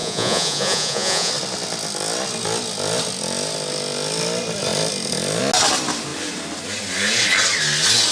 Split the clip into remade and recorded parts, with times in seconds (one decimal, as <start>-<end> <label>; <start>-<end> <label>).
0.0-1.3 remade; 1.3-8.1 recorded